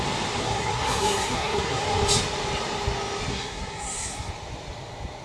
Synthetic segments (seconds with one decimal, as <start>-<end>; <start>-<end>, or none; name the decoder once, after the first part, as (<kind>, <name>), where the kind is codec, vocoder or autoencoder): 0.4-1.8 (codec, SNAC); 3.3-4.3